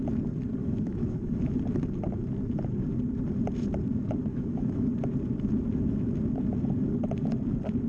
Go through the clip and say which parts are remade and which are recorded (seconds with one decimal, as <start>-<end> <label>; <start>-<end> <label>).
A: 0.0-0.6 recorded; 0.6-1.4 remade; 1.4-4.3 recorded; 4.3-4.9 remade; 4.9-7.9 recorded